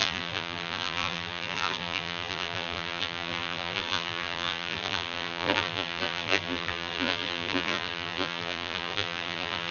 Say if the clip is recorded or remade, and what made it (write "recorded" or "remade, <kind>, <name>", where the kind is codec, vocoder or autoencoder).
remade, vocoder, BigVGAN v2